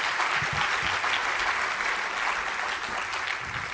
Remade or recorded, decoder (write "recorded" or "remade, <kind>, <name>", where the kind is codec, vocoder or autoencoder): recorded